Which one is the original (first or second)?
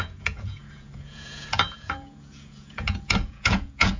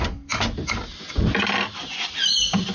second